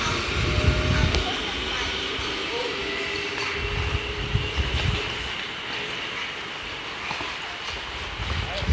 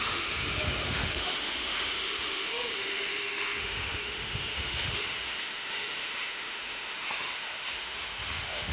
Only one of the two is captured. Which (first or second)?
first